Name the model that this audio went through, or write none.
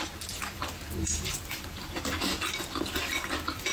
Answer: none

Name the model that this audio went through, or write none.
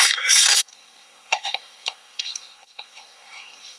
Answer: codec, SNAC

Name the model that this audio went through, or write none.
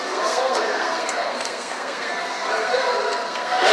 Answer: codec, SNAC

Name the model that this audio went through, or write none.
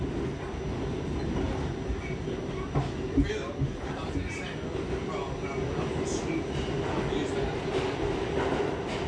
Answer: none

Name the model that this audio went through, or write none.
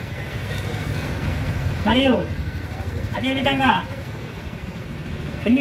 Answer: codec, SNAC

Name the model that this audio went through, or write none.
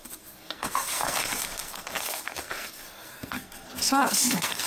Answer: codec, SNAC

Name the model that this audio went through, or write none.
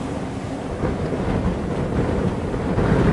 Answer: none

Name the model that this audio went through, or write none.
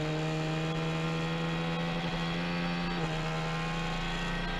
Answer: none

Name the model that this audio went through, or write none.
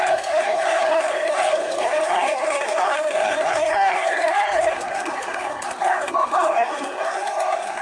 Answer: codec, SNAC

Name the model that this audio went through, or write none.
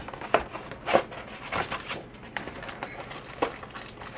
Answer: none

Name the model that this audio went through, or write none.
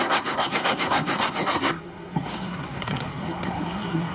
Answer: codec, SNAC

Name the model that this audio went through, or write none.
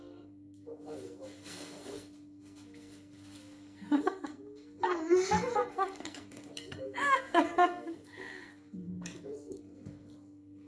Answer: codec, SNAC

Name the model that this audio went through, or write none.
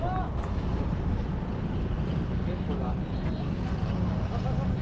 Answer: none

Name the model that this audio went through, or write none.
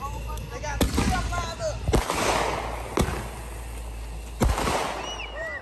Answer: none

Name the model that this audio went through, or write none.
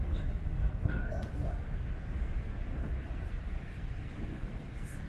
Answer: codec, SNAC